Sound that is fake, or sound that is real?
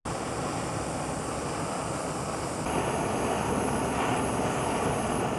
real